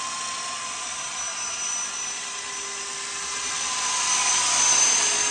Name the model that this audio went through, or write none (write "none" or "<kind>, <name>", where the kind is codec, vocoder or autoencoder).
none